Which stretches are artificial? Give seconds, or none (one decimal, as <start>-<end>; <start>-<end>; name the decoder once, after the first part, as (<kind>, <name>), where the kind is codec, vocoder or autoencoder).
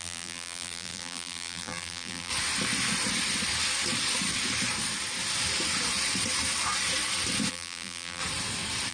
0.0-2.3 (vocoder, BigVGAN v2); 7.5-8.2